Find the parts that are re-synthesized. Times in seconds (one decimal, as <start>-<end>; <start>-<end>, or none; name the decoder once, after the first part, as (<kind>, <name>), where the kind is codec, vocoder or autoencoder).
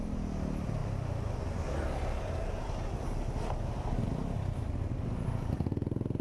none